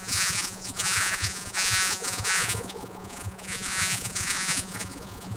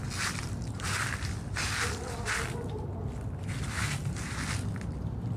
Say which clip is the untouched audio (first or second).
second